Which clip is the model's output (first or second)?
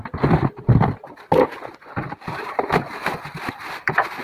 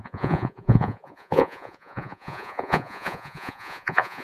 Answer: second